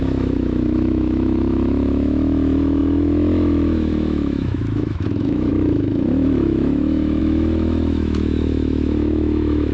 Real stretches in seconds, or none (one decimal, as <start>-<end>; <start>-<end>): none